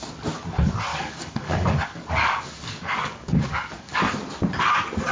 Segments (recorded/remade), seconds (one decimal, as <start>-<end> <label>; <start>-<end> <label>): 0.0-0.9 recorded; 0.9-4.0 remade; 4.0-5.1 recorded